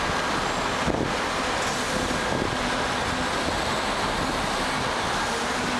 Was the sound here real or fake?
real